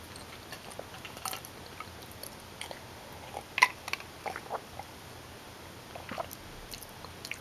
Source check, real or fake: real